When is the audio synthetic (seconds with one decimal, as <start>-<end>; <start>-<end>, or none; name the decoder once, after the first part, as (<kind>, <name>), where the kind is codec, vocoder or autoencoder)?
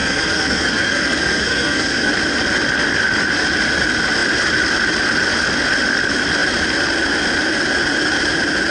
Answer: 0.0-2.1 (codec, SNAC)